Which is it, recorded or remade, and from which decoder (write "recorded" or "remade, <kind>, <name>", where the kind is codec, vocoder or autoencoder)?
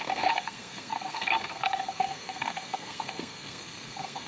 remade, codec, SNAC